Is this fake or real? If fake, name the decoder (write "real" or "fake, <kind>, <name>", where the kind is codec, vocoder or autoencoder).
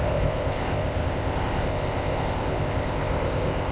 fake, codec, ZipCodec